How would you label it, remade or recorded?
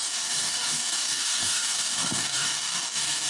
remade